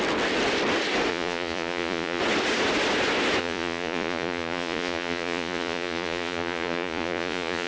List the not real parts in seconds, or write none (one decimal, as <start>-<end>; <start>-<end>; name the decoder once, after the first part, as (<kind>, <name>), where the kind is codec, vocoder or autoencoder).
1.1-2.2 (vocoder, Vocos); 3.4-7.7